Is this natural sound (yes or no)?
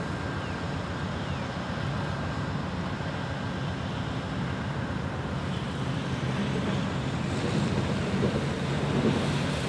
yes